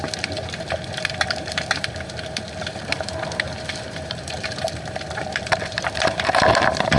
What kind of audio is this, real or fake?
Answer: fake